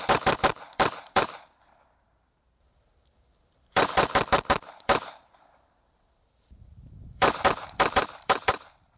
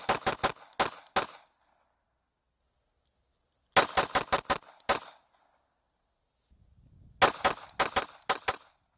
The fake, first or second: first